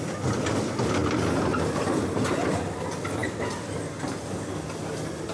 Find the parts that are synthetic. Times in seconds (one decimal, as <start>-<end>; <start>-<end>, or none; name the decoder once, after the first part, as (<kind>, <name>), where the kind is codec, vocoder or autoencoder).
none